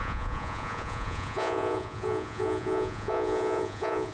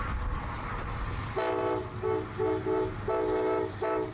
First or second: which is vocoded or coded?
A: first